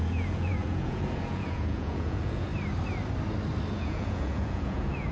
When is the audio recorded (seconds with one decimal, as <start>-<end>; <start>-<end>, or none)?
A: 2.5-3.7